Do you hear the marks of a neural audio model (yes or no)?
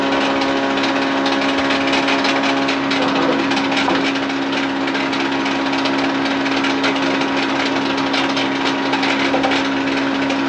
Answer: no